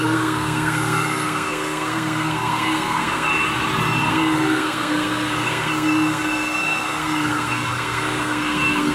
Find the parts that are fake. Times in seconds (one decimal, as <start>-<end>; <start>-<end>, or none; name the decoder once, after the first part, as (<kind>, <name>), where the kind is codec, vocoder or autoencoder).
0.0-3.3 (codec, SNAC); 4.1-8.9